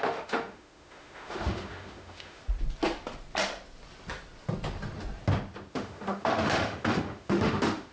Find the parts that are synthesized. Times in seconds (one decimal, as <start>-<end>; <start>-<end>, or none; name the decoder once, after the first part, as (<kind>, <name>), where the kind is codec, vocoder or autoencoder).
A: 0.0-2.4 (autoencoder, DAC-VAE); 5.7-7.9